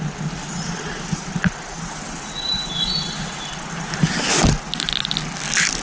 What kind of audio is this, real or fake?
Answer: real